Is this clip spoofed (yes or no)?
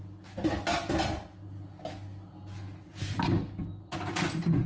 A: no